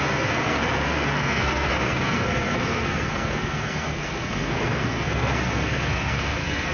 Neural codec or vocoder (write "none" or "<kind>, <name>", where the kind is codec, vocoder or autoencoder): codec, SNAC